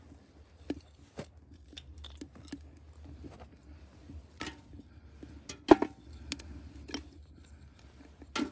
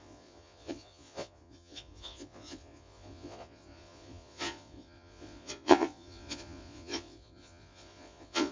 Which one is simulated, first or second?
second